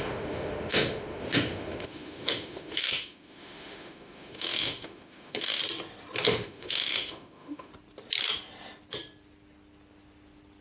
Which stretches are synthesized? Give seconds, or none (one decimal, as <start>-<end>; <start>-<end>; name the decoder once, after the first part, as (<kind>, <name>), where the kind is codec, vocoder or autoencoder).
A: 0.0-5.6 (autoencoder, DAC-VAE); 6.2-7.7